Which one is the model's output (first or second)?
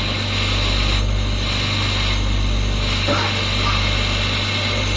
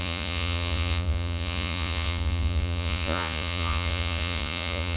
second